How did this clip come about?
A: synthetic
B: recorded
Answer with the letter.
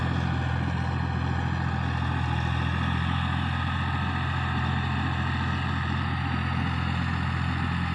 B